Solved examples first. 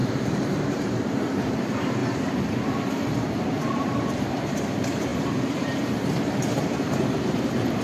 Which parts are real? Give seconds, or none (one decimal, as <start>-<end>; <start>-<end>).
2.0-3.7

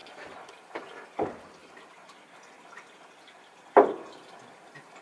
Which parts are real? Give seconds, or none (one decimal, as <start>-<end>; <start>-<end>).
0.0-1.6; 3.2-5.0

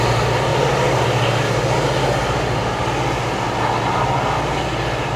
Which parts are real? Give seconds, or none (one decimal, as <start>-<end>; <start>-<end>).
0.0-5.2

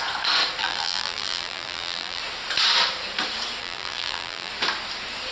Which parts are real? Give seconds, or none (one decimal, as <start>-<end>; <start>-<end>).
0.0-0.6; 2.2-3.6; 4.5-5.3

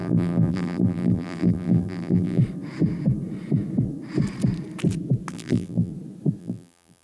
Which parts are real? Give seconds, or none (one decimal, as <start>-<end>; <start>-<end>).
2.4-5.3; 5.9-6.4

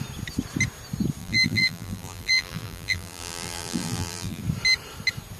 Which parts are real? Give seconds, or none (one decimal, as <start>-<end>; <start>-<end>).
0.0-1.2; 4.4-5.4

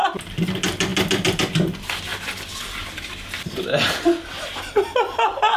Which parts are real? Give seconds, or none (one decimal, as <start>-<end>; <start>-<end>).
0.0-5.6